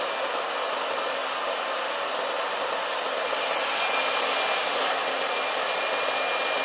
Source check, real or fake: real